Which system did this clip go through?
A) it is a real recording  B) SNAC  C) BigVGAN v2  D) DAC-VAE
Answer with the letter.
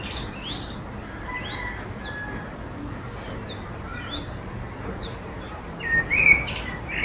A